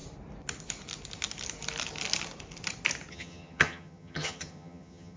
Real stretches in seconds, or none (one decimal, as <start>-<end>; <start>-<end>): 0.0-3.1